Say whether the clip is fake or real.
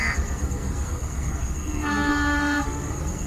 fake